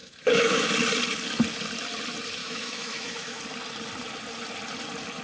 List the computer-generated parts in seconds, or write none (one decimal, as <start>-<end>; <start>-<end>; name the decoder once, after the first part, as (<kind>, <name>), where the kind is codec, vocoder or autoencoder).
0.0-0.7 (autoencoder, DAC-VAE); 2.4-3.4